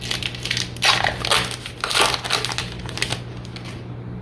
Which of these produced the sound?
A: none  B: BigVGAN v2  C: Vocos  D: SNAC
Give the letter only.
A